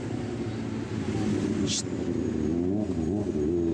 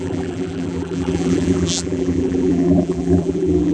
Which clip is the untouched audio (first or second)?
first